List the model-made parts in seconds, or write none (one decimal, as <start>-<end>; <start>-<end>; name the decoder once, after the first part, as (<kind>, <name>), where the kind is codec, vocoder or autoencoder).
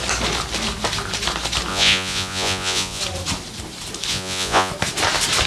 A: 1.7-3.0 (vocoder, Vocos); 4.1-4.7